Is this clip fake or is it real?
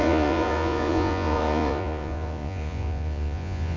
fake